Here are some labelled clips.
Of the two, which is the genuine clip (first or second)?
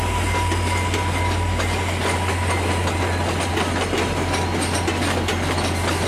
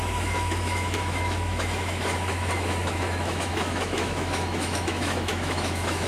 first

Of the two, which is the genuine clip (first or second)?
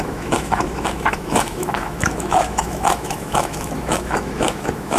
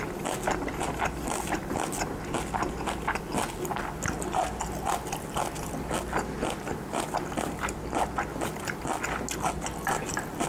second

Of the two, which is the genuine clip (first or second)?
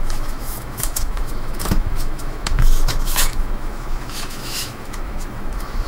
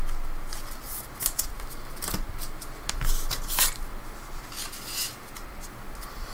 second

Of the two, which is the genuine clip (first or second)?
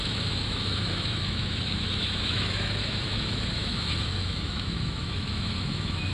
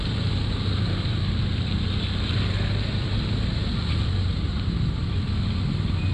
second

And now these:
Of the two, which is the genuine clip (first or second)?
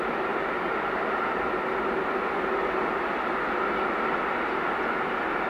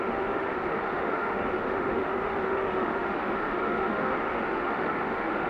first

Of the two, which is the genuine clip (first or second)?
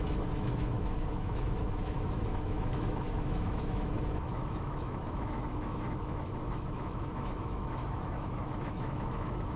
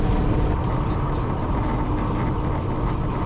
second